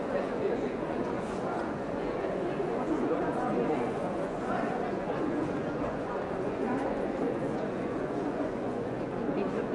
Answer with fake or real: fake